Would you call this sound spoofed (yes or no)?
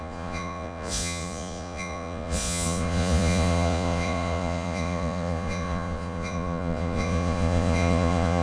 yes